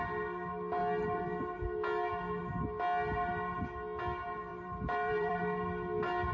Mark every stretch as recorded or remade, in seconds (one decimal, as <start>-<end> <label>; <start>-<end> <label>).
0.0-4.5 recorded; 4.5-5.4 remade; 5.4-6.3 recorded